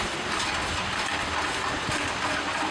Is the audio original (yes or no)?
yes